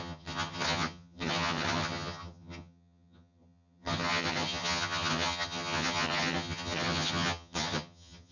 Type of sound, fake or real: fake